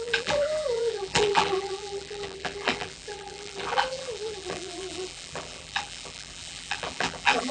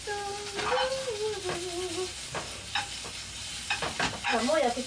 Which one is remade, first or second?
first